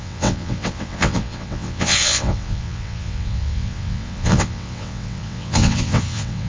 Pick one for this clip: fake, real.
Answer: fake